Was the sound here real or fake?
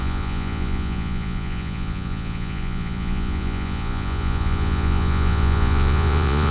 fake